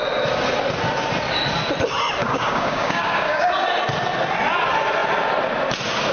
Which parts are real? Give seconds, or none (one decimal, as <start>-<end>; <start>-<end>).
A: 0.0-2.2; 3.6-6.1